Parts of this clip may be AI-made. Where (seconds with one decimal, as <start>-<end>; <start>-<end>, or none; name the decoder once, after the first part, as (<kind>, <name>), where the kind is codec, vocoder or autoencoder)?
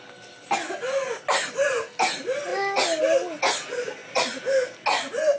none